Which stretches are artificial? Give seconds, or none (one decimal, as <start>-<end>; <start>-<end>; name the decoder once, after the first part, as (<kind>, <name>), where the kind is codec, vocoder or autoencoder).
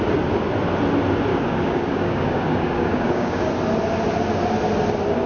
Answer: 1.3-3.5 (codec, DAC)